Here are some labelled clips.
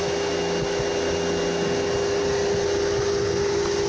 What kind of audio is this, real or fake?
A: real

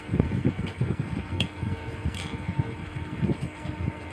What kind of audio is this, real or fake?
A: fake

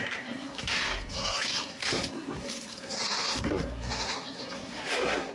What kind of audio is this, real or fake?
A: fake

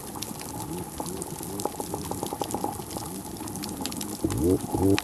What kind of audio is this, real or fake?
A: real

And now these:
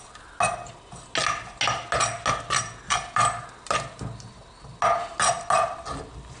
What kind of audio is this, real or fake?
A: real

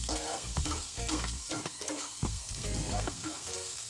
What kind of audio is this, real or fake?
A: fake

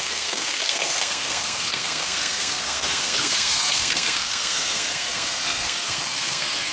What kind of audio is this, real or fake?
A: fake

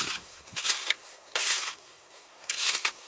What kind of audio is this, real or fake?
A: fake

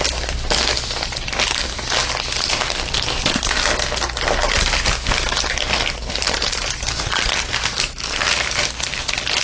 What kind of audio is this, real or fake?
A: real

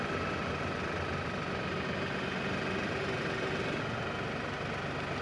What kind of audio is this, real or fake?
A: real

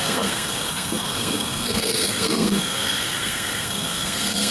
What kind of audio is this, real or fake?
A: fake